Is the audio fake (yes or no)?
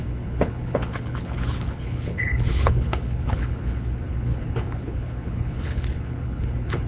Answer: yes